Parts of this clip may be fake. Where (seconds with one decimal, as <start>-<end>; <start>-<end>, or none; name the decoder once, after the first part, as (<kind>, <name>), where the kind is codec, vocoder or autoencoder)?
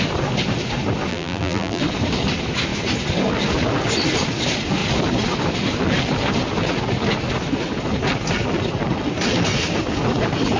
1.1-1.8 (vocoder, BigVGAN v2)